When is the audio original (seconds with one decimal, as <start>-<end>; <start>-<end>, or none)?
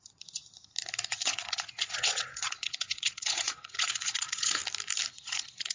0.5-1.1; 4.6-5.1